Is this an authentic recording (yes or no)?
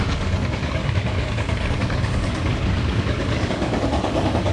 no